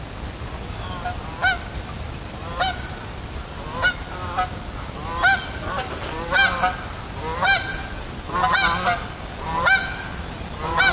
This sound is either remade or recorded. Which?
recorded